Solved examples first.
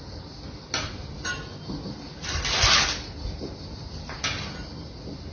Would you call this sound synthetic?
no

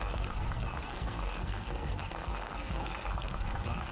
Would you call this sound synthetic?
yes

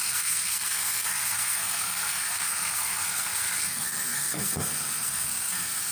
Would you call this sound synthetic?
yes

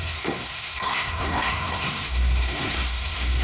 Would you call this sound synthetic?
yes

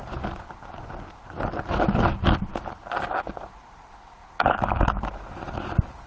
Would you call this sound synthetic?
no